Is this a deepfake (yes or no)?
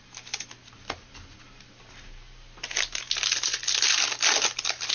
no